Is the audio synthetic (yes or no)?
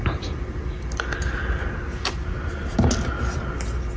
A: no